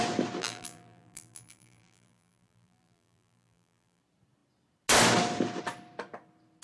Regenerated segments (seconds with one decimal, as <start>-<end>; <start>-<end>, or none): 0.4-4.0